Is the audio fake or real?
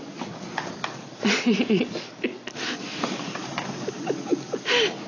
real